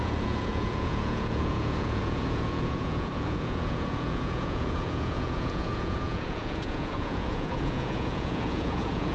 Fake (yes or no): yes